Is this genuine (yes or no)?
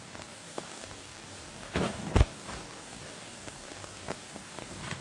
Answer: no